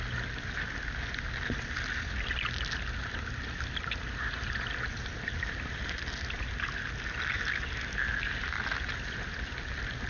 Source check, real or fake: real